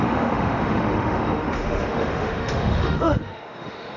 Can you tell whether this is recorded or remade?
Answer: remade